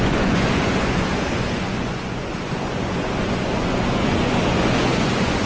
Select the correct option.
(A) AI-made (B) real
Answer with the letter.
A